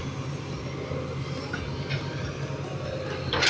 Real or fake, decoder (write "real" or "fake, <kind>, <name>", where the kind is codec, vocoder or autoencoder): real